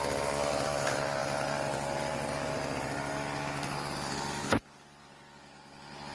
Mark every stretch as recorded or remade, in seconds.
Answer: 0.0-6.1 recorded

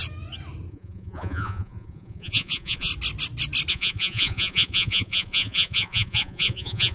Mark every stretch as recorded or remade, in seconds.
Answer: 0.0-0.7 recorded; 0.7-2.9 remade; 2.9-3.7 recorded; 3.7-6.9 remade